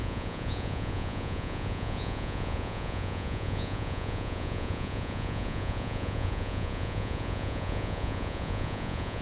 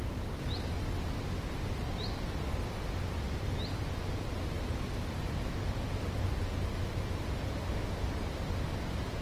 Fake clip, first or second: first